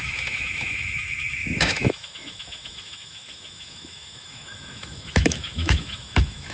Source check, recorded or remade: remade